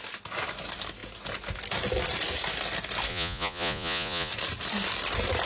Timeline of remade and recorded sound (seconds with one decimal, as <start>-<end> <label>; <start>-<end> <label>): 0.0-3.1 recorded; 3.1-4.3 remade; 4.3-5.5 recorded